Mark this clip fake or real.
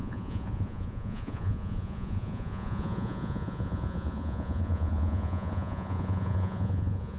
fake